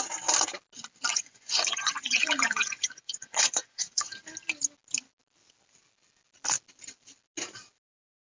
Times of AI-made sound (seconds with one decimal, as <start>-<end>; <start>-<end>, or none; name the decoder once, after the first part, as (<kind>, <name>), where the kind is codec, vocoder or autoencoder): 1.1-4.1 (vocoder, Vocos)